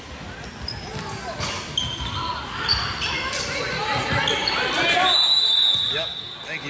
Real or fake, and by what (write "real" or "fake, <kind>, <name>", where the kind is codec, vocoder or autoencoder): real